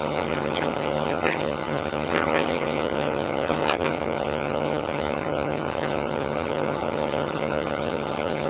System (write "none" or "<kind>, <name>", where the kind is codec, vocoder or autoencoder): vocoder, HiFi-GAN